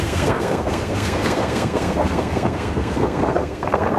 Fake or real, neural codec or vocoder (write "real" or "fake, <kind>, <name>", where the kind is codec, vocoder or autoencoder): fake, codec, SNAC